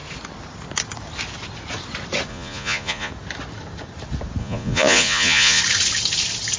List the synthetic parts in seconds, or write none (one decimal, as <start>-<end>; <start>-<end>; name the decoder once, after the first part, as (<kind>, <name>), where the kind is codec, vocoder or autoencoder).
2.3-3.1 (vocoder, Vocos); 4.4-5.6